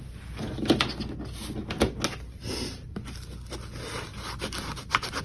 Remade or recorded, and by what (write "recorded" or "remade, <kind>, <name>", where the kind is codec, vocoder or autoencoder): recorded